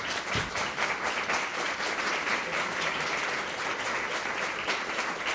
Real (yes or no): no